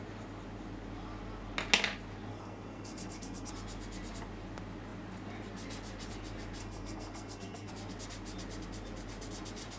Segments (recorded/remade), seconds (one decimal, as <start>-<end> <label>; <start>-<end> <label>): 0.0-2.3 recorded; 2.3-3.5 remade; 3.5-6.6 recorded; 6.6-7.7 remade; 7.7-9.8 recorded

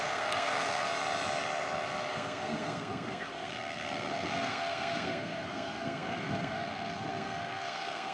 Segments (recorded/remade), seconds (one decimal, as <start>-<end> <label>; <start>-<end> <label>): 0.0-0.9 remade; 0.9-2.1 recorded; 2.1-8.1 remade

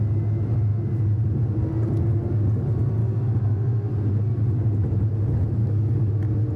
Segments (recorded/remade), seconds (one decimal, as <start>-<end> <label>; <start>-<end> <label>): 0.0-3.0 recorded; 3.0-3.9 remade; 3.9-5.6 recorded; 5.6-6.1 remade; 6.1-6.6 recorded

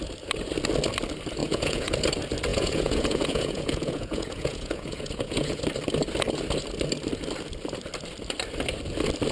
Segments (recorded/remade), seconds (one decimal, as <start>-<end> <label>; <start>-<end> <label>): 0.0-1.4 recorded; 1.4-1.9 remade; 1.9-2.5 recorded; 2.5-5.6 remade; 5.6-9.3 recorded

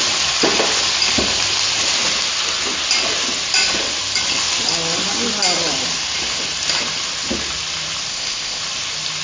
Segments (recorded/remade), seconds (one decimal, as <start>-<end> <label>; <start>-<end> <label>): 0.0-8.1 recorded; 8.1-8.6 remade; 8.6-9.2 recorded

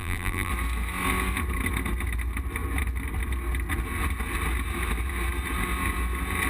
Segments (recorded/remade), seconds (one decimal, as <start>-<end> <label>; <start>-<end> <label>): 0.0-0.5 remade; 0.5-6.5 recorded

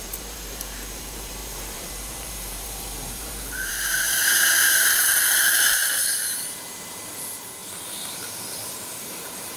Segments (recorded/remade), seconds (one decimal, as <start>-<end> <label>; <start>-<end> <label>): 0.0-7.6 remade; 7.6-8.5 recorded; 8.5-9.6 remade